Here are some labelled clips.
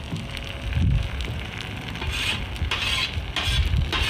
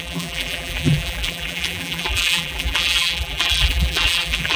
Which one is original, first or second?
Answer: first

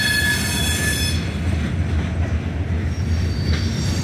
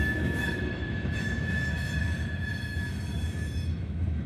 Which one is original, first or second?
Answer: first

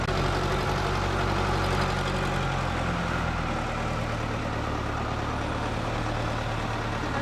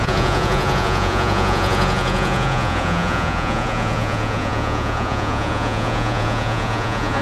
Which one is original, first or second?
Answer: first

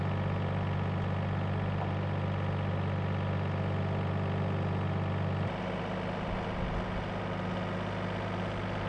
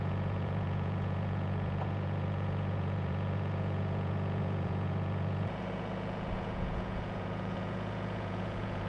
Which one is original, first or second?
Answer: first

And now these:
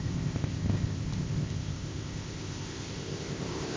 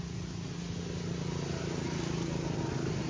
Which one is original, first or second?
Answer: second